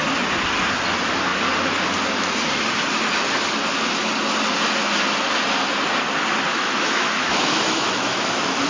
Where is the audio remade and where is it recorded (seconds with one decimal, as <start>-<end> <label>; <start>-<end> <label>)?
0.0-6.5 recorded; 6.5-8.7 remade